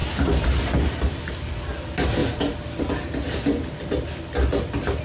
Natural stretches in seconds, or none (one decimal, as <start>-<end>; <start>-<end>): 0.0-5.0